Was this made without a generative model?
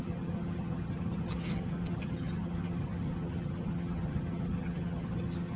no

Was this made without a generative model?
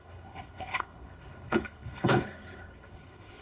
no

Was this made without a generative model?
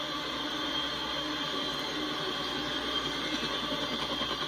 yes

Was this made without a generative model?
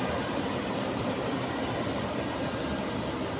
no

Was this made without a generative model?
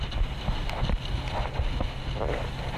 yes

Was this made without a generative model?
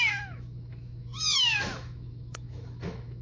no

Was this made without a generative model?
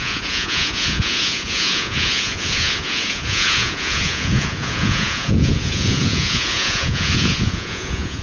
no